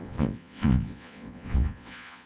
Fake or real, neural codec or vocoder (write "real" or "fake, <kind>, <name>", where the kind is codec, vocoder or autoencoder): fake, vocoder, Vocos